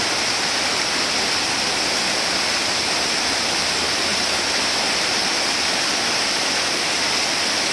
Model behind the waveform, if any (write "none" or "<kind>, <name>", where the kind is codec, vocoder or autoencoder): none